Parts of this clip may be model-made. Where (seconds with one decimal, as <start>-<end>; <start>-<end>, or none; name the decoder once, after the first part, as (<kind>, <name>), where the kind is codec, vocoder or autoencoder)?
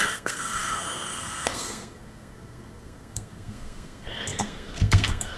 0.0-5.4 (codec, SNAC)